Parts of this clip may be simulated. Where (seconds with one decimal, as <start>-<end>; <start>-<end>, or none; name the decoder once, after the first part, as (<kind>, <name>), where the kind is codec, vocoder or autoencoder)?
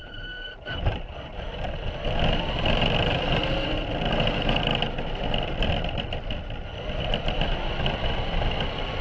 0.0-1.5 (vocoder, BigVGAN v2)